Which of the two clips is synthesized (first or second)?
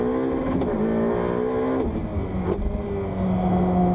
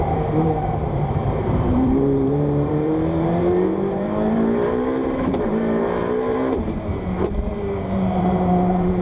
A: second